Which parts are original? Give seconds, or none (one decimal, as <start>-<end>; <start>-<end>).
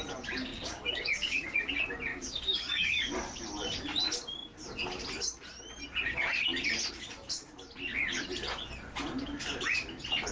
0.0-0.5; 1.7-2.1; 3.1-10.3